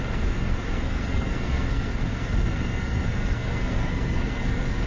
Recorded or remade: remade